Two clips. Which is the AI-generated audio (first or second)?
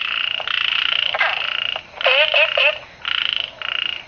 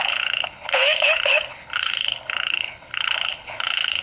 second